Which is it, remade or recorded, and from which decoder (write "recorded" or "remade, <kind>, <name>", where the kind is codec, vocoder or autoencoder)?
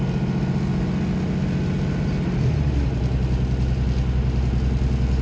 recorded